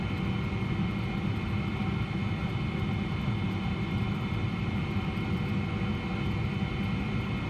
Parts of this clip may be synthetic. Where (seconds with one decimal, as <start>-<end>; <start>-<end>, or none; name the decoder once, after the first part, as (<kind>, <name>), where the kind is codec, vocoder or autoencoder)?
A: none